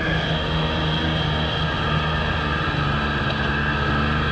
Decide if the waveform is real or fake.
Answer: real